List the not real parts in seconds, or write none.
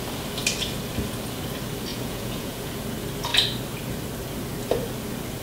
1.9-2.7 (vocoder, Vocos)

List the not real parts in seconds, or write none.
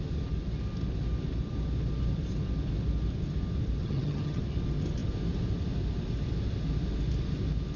3.8-4.4 (vocoder, HiFi-GAN)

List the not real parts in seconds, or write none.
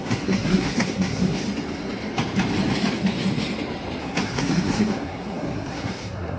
0.0-1.4 (codec, SNAC); 4.0-6.4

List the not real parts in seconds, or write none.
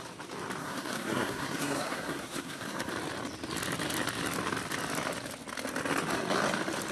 0.6-2.9 (codec, SNAC)